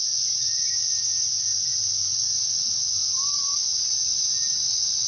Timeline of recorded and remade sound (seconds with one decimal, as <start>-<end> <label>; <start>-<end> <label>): 0.0-5.1 recorded